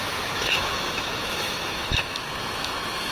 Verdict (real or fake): fake